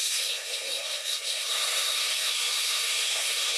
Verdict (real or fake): fake